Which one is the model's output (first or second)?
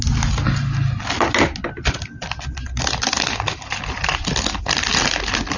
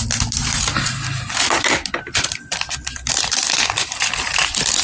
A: second